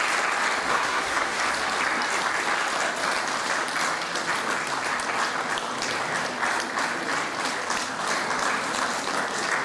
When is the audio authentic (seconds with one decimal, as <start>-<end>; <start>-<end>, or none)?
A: 0.0-0.7; 1.4-9.6